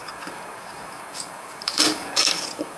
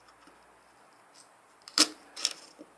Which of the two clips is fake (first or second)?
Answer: first